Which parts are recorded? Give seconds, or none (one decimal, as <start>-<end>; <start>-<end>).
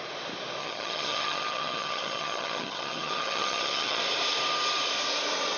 0.0-0.6; 4.0-5.6